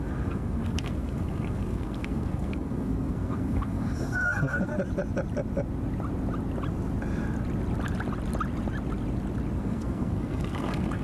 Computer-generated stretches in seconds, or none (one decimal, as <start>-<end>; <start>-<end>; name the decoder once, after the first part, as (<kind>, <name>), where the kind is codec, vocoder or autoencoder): 0.0-4.7 (codec, SNAC); 9.6-11.0

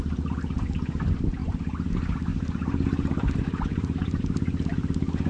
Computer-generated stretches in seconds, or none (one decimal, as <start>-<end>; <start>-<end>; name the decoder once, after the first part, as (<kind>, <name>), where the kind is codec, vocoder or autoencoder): 1.4-1.9 (vocoder, BigVGAN v2); 2.3-4.2

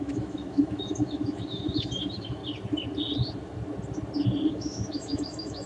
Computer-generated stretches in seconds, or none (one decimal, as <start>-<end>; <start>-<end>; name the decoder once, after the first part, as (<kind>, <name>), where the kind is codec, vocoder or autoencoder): 0.0-2.4 (autoencoder, DAC-VAE); 4.5-5.7

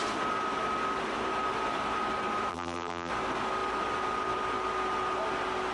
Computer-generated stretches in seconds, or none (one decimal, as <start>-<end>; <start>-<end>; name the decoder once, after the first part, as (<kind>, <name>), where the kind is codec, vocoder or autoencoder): 2.5-3.1 (vocoder, BigVGAN v2)

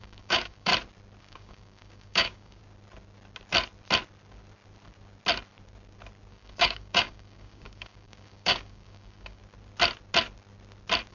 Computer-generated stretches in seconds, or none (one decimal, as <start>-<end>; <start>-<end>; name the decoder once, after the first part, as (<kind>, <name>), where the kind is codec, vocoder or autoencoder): 0.0-0.7 (codec, DAC); 1.2-2.6; 6.3-9.4

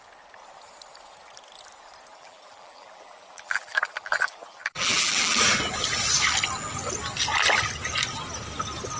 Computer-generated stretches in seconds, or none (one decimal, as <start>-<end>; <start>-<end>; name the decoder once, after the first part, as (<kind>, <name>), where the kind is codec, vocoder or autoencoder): 2.1-5.4 (vocoder, BigVGAN v2)